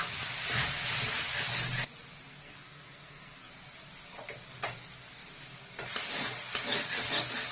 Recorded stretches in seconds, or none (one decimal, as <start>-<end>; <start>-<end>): 0.0-2.3; 3.5-7.5